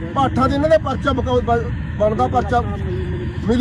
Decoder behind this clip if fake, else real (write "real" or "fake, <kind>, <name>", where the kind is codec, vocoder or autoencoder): fake, autoencoder, DAC-VAE